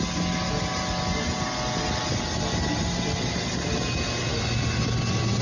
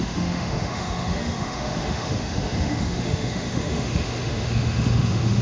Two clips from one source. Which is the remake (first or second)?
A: second